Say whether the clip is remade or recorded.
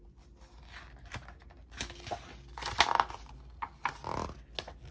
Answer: recorded